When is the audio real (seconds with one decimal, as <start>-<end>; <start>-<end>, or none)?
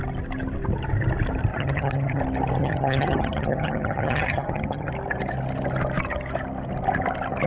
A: 0.0-1.5; 2.2-2.6; 4.9-7.5